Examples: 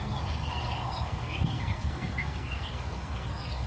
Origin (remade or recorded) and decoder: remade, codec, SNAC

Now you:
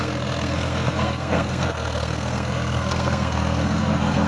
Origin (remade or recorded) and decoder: remade, codec, SNAC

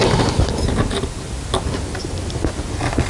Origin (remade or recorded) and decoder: recorded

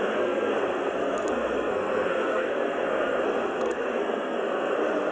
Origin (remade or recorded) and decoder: remade, codec, SNAC